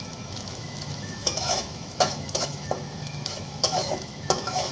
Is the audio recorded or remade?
remade